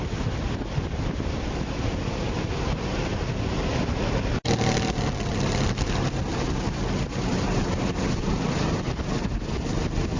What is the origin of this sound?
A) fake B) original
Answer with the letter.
B